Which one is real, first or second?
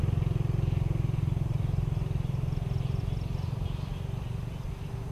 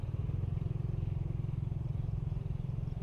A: first